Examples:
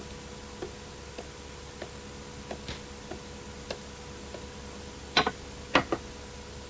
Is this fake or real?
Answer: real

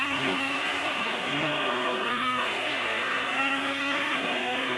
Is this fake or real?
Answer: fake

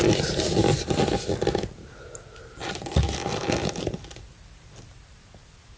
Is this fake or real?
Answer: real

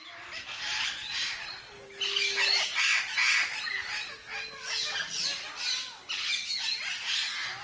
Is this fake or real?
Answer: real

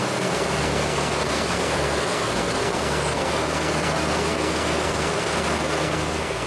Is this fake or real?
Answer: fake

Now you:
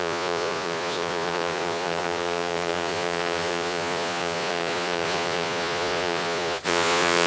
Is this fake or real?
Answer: fake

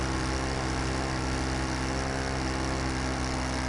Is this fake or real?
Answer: real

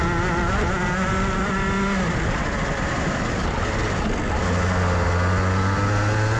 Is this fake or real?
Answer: real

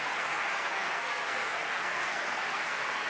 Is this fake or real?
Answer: fake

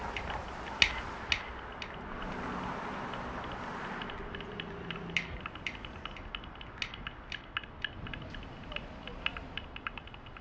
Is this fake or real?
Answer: real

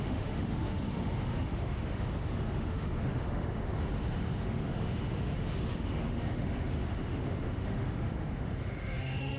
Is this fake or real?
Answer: fake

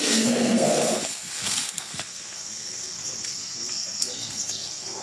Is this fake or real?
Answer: fake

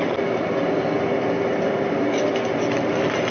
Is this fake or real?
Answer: real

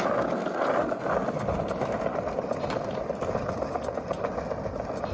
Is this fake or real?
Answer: real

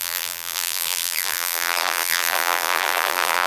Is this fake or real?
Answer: fake